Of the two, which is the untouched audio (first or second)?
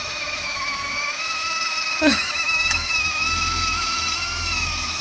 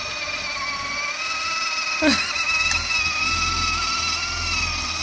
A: second